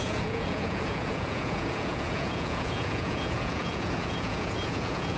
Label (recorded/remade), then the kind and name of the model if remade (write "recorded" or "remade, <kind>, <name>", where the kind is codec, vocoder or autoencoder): remade, vocoder, Vocos